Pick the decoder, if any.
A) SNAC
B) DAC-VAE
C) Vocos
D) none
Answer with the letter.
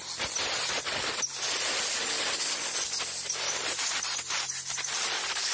D